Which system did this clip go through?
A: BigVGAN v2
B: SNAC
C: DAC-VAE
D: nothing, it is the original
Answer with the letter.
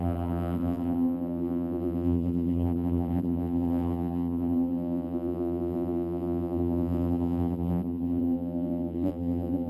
A